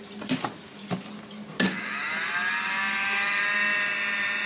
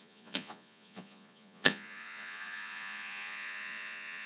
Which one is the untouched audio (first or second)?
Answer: first